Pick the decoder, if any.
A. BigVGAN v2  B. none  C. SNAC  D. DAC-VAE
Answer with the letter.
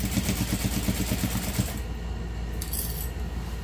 B